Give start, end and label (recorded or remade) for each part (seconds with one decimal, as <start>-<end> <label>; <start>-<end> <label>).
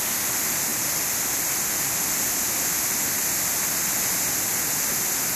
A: 0.0-5.4 recorded